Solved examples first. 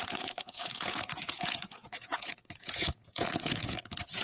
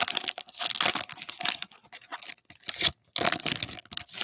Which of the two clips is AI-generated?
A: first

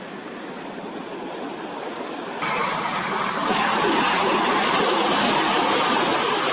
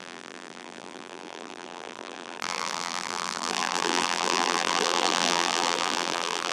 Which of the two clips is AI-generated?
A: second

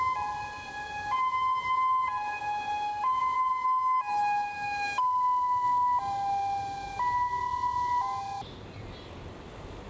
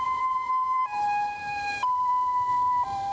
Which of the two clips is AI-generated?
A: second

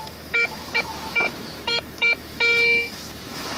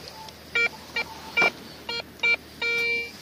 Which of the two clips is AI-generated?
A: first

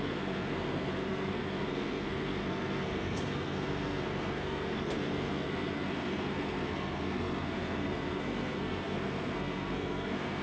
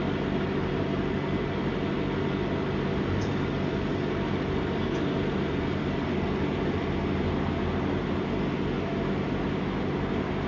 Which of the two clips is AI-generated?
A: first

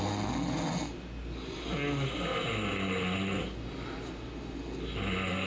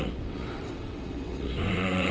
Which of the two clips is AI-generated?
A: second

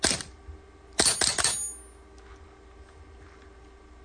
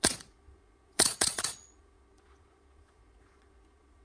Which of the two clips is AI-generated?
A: second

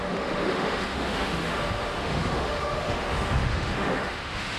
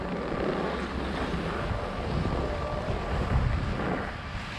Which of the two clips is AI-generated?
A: first